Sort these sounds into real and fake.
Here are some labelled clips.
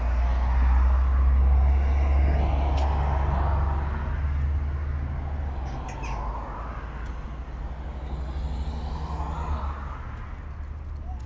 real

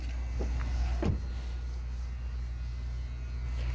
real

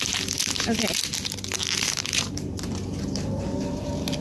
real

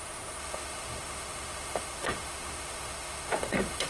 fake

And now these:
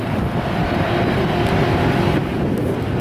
real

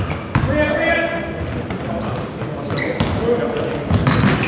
real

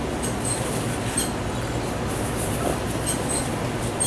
real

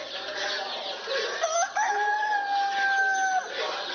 real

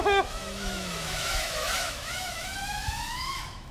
fake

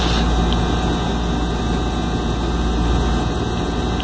real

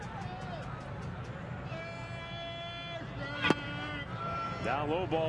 real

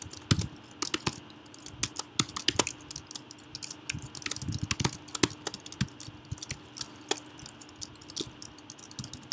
real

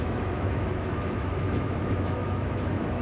fake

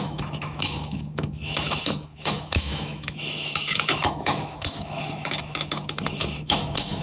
fake